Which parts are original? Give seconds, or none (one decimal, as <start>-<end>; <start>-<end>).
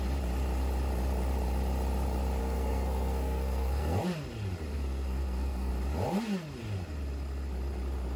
0.0-2.4; 4.0-4.7; 5.7-8.2